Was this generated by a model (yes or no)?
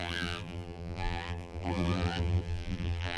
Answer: yes